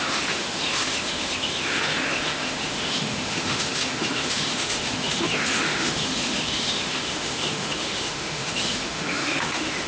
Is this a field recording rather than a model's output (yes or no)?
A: no